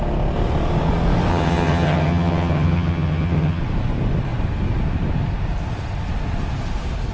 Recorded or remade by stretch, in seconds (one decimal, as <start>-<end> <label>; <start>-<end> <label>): 0.0-1.3 recorded; 1.3-3.6 remade; 3.6-7.1 recorded